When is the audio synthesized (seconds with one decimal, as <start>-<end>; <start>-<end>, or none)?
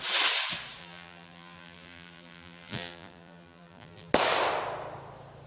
0.8-4.1